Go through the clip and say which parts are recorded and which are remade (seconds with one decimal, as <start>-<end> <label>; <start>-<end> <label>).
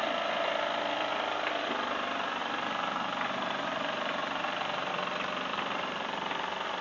0.0-2.4 recorded; 2.4-4.9 remade; 4.9-5.5 recorded; 5.5-6.3 remade; 6.3-6.8 recorded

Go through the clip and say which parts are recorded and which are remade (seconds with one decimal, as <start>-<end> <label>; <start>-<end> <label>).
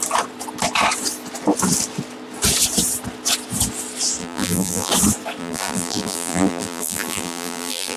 0.0-4.2 recorded; 4.2-4.9 remade; 4.9-5.4 recorded; 5.4-8.0 remade